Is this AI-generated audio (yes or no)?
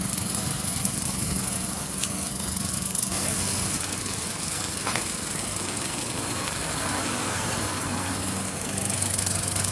yes